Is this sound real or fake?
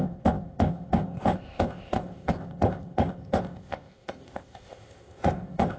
fake